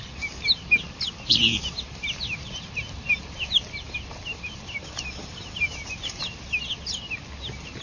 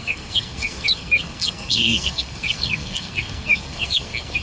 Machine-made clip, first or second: second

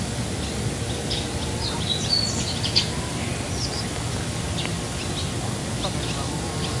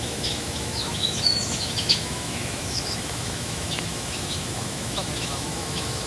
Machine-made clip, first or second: second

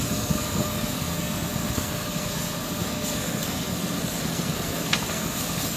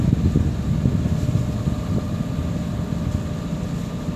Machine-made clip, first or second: first